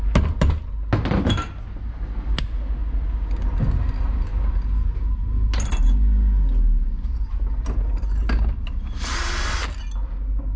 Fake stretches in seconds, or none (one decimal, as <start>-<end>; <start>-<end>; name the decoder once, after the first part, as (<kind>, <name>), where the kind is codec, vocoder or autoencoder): none